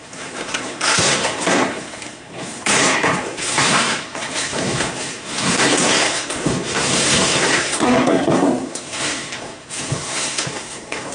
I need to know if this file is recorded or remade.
remade